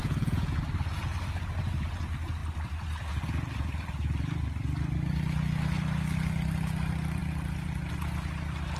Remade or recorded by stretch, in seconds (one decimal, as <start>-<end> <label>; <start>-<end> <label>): 0.0-0.6 remade; 0.6-8.8 recorded